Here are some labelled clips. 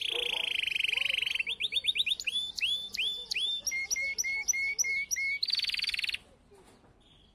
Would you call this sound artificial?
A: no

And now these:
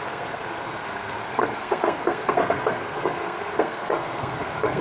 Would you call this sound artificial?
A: yes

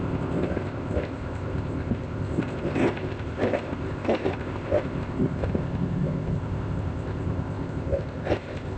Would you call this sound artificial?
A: yes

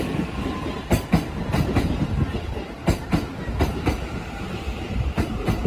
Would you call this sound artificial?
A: no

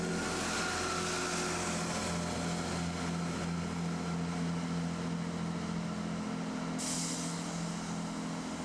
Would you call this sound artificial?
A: no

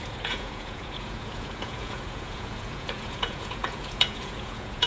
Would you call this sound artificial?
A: yes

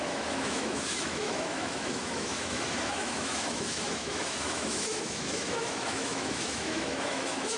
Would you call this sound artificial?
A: yes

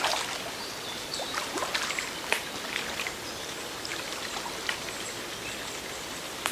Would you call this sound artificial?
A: no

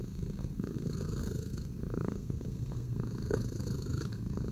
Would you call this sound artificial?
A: yes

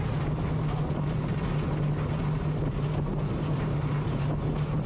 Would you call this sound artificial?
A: no